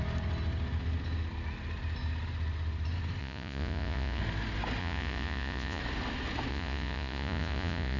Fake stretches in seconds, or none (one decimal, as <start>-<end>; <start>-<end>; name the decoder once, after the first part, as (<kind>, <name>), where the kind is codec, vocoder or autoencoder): 3.2-4.2 (vocoder, Vocos); 4.8-5.8; 6.5-8.0